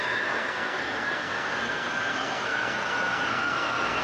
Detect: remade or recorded remade